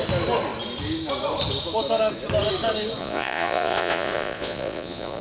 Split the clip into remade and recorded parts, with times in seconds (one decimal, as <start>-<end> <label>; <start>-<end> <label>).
0.0-3.0 recorded; 3.0-5.2 remade